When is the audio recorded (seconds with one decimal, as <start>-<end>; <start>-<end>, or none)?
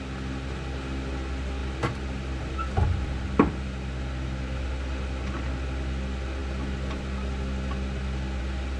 0.0-1.6; 4.7-8.8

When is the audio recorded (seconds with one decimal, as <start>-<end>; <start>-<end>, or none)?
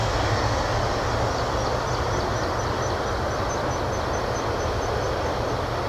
0.0-5.9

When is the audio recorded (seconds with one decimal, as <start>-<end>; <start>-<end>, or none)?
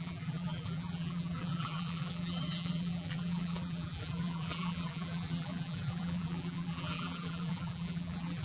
none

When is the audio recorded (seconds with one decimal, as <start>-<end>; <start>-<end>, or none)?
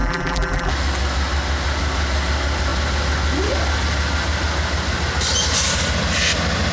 0.7-6.7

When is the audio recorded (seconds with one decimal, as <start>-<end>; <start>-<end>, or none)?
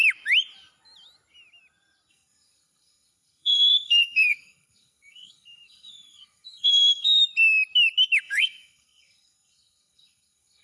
0.0-2.1; 7.2-8.2